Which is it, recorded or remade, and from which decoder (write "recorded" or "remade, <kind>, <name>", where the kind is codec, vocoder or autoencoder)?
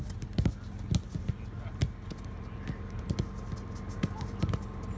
recorded